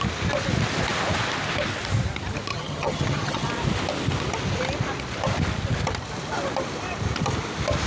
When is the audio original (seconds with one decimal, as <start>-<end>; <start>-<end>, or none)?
0.0-2.5; 3.5-7.9